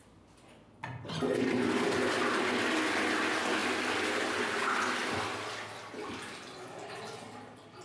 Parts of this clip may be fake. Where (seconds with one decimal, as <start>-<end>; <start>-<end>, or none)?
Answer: none